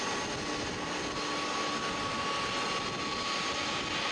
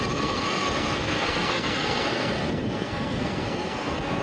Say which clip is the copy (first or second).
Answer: second